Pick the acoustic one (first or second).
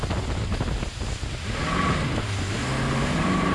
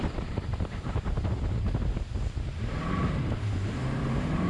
first